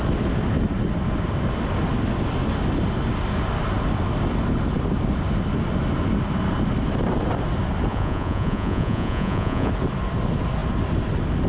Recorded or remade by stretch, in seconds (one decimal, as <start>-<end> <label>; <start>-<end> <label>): 0.0-7.9 recorded; 7.9-9.7 remade; 9.7-11.5 recorded